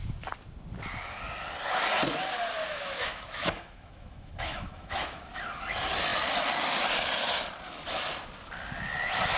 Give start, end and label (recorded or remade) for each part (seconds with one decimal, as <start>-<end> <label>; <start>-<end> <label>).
0.0-2.7 recorded; 2.7-5.4 remade; 5.4-9.4 recorded